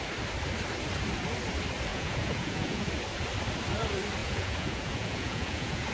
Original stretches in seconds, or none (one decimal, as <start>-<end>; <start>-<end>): 0.0-1.9; 2.9-4.2